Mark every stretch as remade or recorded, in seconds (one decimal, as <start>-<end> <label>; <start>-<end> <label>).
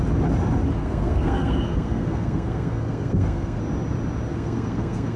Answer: 0.0-0.8 recorded; 0.8-3.6 remade; 3.6-4.3 recorded; 4.3-5.2 remade